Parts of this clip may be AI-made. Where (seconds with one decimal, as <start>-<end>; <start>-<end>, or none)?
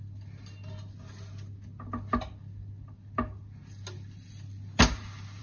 none